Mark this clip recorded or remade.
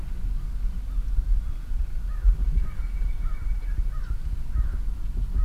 recorded